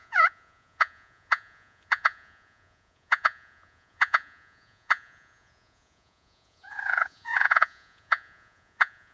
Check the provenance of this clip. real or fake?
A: fake